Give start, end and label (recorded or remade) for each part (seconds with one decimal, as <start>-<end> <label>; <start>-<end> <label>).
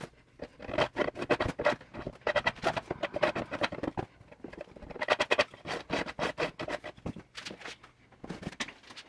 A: 0.0-1.9 recorded; 1.9-5.9 remade; 5.9-9.1 recorded